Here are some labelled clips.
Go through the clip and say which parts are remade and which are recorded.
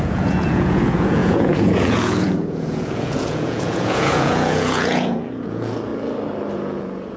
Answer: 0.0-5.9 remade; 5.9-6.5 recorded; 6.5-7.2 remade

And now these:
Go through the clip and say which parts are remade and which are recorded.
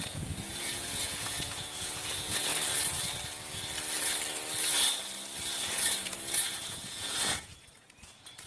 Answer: 0.0-2.5 remade; 2.5-5.7 recorded; 5.7-8.5 remade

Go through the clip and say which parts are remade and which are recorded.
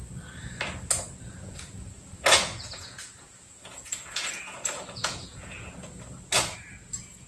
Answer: 0.0-1.3 recorded; 1.3-5.7 remade; 5.7-7.3 recorded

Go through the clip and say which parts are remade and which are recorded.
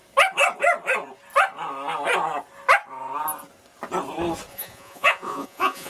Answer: 0.0-4.5 recorded; 4.5-5.9 remade